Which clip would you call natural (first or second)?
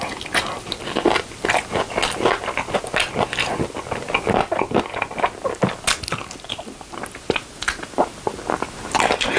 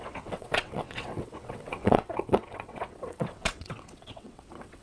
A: first